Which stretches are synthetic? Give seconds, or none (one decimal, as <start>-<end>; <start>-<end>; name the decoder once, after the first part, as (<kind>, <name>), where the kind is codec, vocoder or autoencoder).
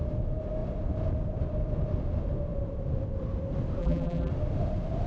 3.8-4.3 (vocoder, BigVGAN v2)